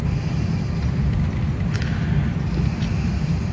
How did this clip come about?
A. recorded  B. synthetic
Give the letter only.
A